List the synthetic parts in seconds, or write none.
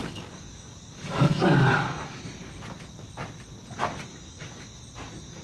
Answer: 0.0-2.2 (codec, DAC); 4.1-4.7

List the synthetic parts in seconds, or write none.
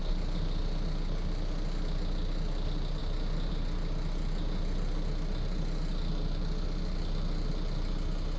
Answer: none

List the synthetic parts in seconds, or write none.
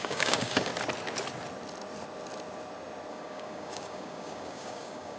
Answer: 0.0-0.7 (codec, DAC); 3.1-5.2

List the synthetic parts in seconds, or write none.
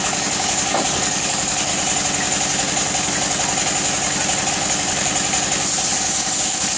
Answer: 0.0-1.7 (codec, DAC); 4.5-5.1; 6.0-6.8